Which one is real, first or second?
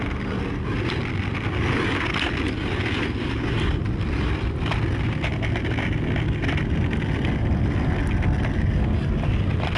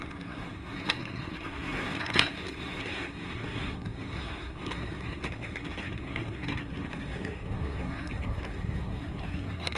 first